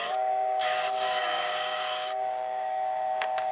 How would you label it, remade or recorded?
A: remade